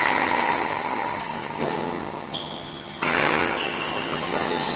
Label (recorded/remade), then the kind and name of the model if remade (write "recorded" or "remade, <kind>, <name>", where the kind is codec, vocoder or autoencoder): remade, vocoder, HiFi-GAN